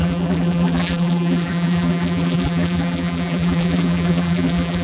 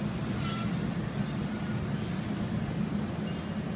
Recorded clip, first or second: second